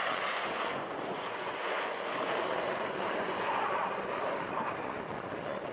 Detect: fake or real fake